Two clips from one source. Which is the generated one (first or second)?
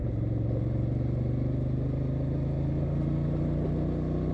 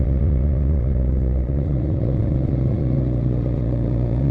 second